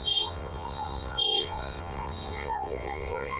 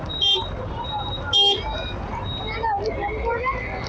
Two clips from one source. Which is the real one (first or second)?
second